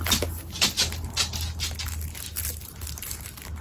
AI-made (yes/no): no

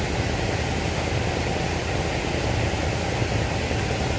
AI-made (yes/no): no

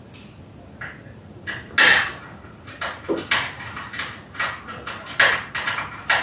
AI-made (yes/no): no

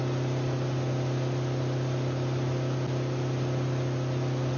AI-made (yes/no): no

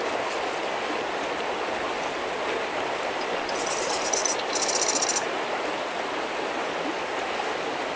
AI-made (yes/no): no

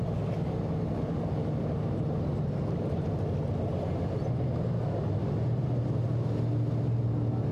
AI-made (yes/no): no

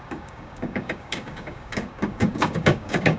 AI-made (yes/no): yes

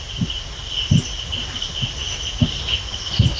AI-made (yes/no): no